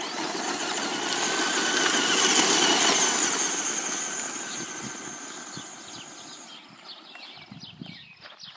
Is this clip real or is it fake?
real